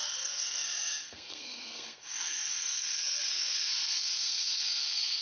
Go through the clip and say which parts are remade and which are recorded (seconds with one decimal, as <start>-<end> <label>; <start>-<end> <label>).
0.0-5.2 remade